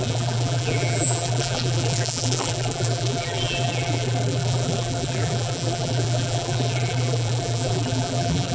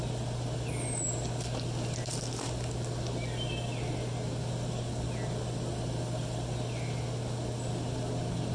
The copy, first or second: first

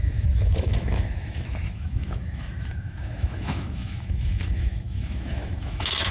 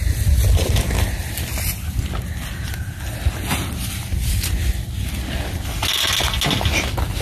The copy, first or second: first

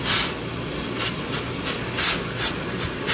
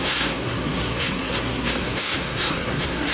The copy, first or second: second